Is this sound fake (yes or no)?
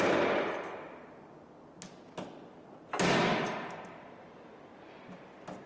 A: no